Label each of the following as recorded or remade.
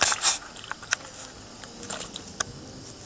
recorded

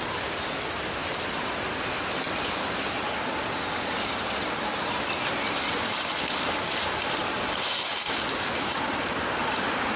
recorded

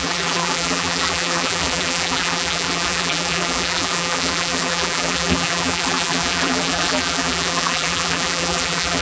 remade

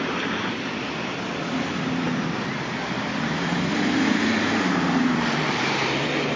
remade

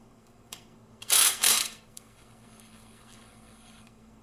remade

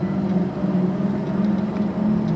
recorded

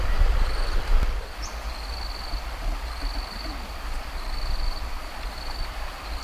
recorded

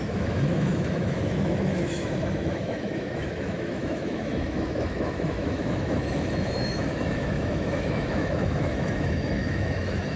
remade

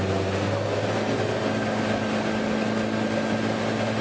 recorded